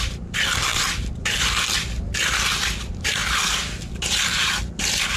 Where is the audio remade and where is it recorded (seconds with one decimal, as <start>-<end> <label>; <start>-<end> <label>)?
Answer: 0.0-5.2 recorded